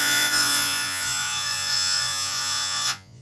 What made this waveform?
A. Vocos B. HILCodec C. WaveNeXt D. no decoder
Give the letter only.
A